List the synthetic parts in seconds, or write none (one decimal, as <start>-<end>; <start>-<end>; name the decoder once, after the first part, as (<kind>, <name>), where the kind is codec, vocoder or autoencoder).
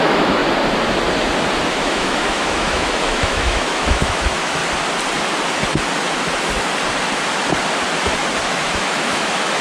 0.0-0.4 (autoencoder, DAC-VAE); 1.7-4.6; 8.5-9.6